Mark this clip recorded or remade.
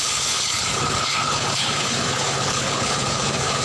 remade